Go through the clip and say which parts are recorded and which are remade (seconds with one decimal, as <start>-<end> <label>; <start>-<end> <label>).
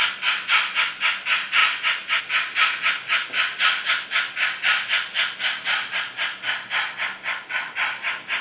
0.0-8.4 recorded